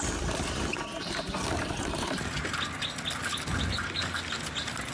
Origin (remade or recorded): recorded